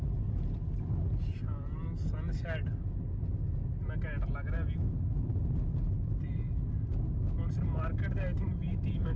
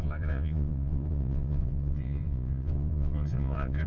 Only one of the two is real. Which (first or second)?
first